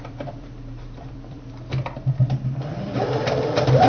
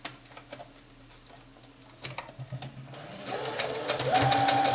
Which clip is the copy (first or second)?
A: first